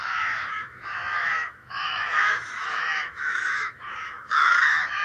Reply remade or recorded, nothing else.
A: remade